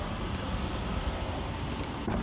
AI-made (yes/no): no